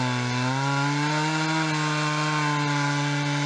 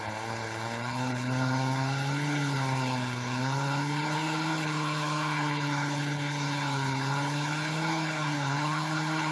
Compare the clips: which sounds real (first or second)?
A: first